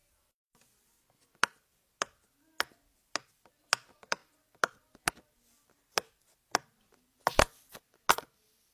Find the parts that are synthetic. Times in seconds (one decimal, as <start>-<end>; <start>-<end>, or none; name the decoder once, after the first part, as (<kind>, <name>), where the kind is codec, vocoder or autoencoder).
none